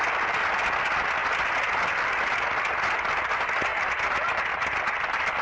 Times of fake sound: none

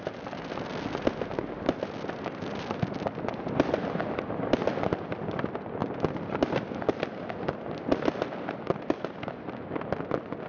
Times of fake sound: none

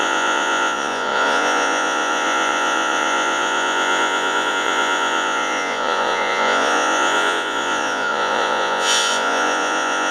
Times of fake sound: 0.0-10.1 (vocoder, Vocos)

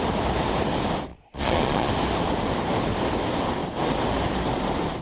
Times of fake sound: 1.1-1.9 (vocoder, Vocos)

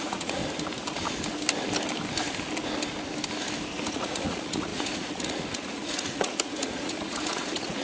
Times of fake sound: 0.0-0.4 (vocoder, Vocos); 3.9-7.8

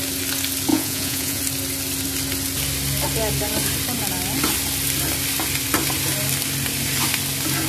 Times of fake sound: 0.7-1.4 (vocoder, Vocos)

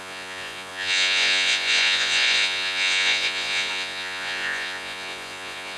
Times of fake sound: 0.0-5.8 (vocoder, Vocos)

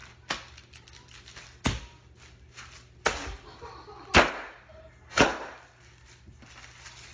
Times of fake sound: none